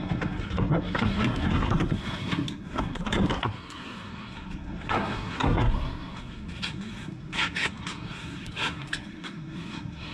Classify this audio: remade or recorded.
remade